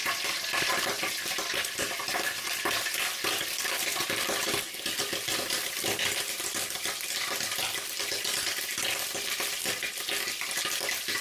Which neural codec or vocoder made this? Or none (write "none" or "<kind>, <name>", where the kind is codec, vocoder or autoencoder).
none